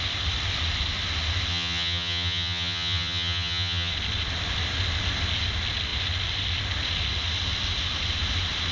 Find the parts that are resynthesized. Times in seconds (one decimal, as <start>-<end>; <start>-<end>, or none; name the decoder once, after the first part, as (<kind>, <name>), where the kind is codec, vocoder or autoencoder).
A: 1.5-3.9 (vocoder, HiFi-GAN)